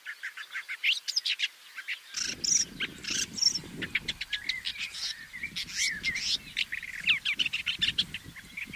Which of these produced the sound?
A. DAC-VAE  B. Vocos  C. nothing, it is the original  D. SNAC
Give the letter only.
C